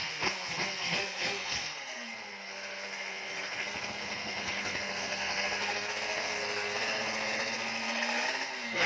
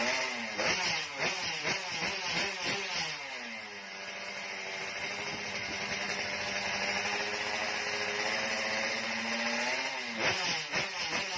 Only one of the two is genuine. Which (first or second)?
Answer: second